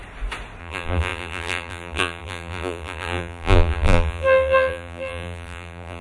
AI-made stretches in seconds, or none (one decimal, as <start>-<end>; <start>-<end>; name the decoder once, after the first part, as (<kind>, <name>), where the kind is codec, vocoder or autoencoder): 0.6-6.0 (vocoder, BigVGAN v2)